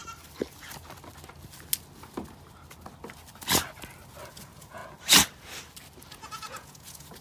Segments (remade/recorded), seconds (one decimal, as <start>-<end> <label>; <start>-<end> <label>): 0.0-4.3 recorded; 4.3-4.8 remade; 4.8-6.1 recorded; 6.1-7.2 remade